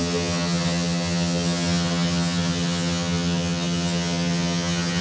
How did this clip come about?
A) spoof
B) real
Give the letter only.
A